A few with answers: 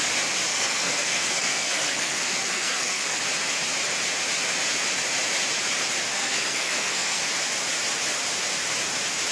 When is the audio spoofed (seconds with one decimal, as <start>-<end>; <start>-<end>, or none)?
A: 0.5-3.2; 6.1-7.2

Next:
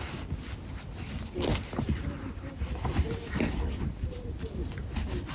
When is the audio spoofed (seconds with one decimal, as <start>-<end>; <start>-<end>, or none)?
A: 1.5-4.7

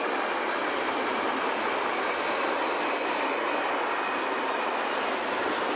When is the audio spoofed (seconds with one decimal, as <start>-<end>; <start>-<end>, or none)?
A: 1.1-1.9

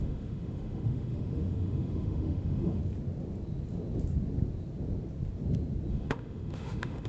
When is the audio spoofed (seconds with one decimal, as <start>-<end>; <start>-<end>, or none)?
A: 0.0-2.8; 5.9-7.1